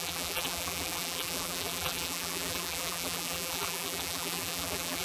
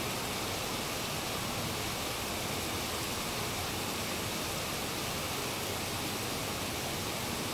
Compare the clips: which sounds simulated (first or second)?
first